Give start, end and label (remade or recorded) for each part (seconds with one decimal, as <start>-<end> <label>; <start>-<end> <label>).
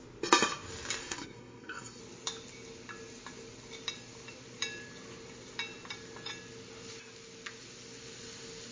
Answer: 0.0-1.0 recorded; 1.0-2.0 remade; 2.0-8.7 recorded